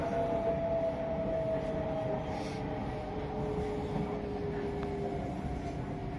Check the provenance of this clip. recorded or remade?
recorded